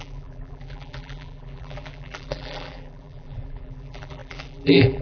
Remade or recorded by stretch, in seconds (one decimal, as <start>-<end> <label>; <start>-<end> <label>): 0.0-5.0 remade